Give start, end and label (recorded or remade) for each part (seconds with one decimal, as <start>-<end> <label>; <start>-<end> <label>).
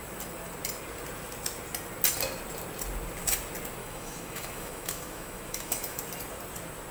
0.0-3.8 recorded; 3.8-6.0 remade; 6.0-6.9 recorded